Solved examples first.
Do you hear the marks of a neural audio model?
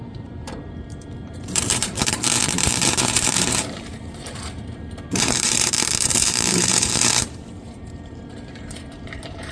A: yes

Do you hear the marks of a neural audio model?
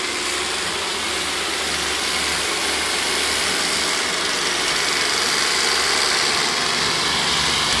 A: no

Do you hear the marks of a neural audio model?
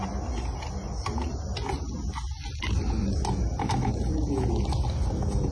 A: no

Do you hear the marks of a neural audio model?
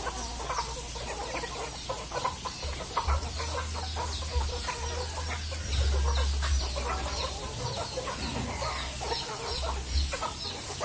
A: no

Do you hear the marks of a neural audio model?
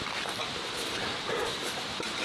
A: no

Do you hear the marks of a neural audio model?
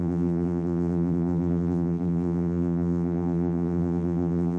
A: yes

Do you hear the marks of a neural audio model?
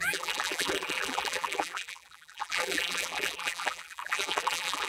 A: yes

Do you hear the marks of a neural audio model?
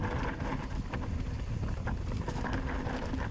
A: no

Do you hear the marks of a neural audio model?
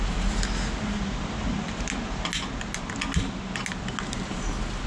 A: no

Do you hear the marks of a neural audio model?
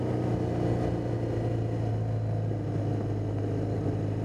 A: no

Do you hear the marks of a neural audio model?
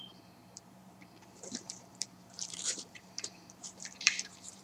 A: yes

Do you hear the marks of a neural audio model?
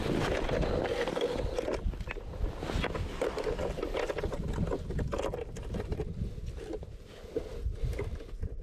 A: no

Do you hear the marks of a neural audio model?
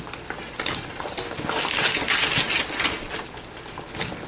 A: no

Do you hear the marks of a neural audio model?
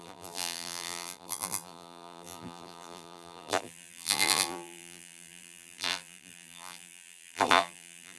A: yes